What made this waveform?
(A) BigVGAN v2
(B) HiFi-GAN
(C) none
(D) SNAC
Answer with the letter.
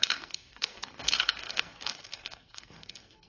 D